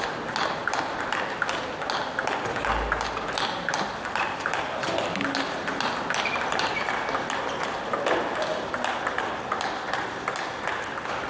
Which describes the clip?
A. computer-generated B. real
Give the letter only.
B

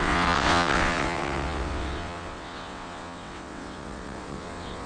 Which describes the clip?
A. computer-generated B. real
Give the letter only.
A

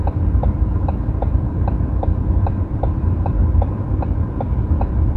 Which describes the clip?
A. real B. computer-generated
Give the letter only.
B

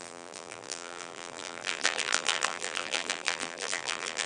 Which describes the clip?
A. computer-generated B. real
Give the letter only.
A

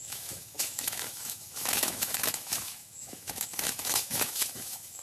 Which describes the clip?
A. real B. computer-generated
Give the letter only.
B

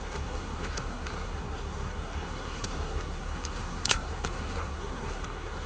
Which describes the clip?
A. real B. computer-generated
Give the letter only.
B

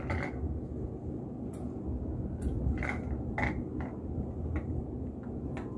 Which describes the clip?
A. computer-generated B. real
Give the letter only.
B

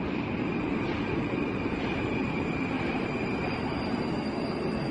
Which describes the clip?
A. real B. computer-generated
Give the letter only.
B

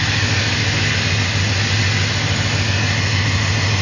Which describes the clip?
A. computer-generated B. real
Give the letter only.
B